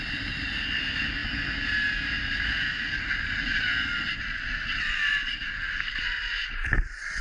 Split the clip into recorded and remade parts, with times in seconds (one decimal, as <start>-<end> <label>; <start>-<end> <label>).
0.0-7.2 recorded

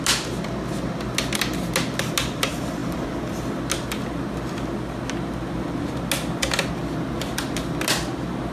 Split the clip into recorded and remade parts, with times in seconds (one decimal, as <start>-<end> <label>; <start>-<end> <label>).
0.0-8.5 recorded

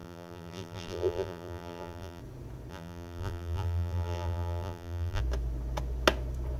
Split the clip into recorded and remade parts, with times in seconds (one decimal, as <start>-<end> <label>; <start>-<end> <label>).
0.0-2.2 remade; 2.2-2.7 recorded; 2.7-5.2 remade; 5.2-6.6 recorded

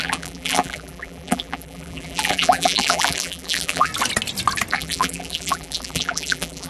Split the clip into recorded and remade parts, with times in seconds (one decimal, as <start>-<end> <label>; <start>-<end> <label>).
0.0-3.9 remade; 3.9-4.7 recorded; 4.7-6.7 remade